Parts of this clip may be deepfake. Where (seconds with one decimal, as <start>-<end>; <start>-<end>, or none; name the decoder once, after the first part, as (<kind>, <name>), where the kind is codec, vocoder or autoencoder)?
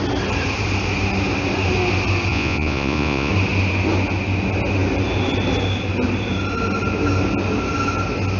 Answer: 2.3-3.3 (vocoder, Vocos)